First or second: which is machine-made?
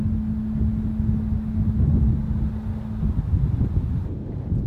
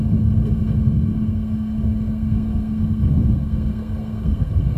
second